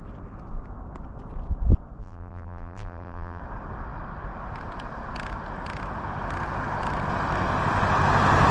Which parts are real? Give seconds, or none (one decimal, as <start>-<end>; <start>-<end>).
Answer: 0.0-2.0; 3.4-8.5